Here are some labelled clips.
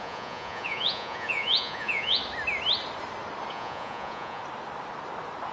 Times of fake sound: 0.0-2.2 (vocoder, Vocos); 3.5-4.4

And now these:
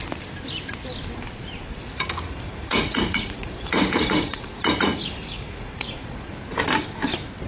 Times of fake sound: 1.8-6.3 (vocoder, Vocos)

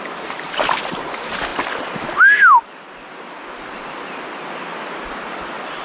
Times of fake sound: none

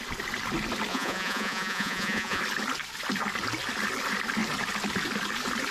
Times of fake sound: 0.9-2.4 (vocoder, Vocos)

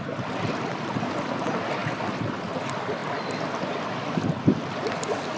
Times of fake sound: none

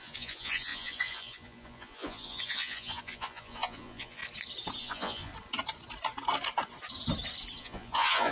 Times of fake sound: 0.0-4.2 (vocoder, Vocos); 4.8-5.3; 7.6-8.3